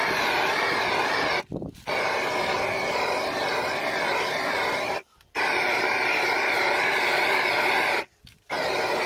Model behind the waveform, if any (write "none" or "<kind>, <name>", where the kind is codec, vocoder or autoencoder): none